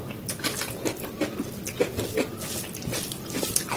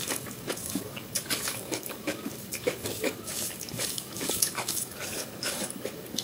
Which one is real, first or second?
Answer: first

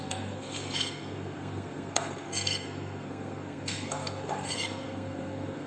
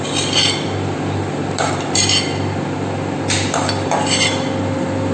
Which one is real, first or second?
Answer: second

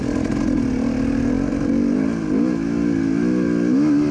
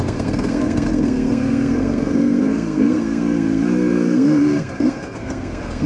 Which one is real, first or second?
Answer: first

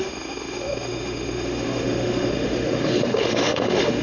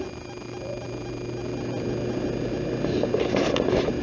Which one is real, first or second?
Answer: second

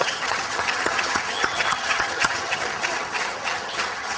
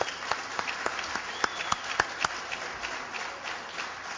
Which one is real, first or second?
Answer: second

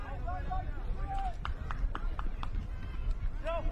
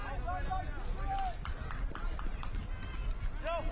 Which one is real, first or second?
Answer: second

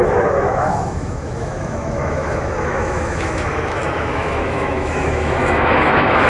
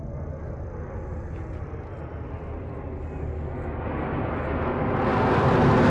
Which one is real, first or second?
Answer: second